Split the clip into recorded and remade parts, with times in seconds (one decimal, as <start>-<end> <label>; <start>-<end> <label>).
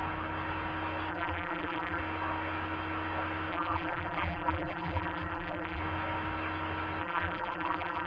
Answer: 0.0-1.1 recorded; 1.1-2.0 remade; 2.0-3.5 recorded; 3.5-5.8 remade; 5.8-7.0 recorded; 7.0-8.1 remade